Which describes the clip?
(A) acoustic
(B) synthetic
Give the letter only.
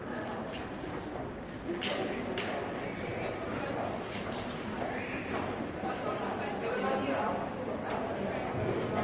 A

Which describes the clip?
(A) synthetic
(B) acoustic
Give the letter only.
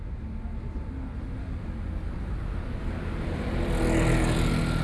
B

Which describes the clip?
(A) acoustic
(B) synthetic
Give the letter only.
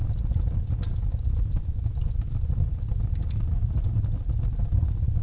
A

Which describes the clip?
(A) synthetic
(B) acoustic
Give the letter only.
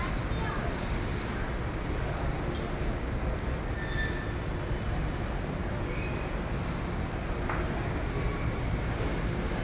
B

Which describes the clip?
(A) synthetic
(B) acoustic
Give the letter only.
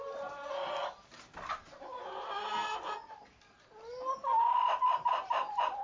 B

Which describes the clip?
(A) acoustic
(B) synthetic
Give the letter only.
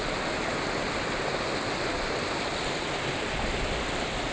A